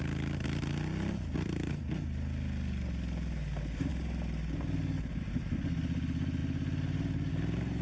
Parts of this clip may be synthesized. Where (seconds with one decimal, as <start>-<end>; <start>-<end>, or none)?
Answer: none